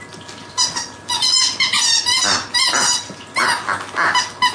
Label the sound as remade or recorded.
recorded